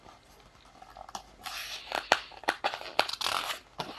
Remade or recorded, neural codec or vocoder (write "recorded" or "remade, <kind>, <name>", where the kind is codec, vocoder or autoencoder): recorded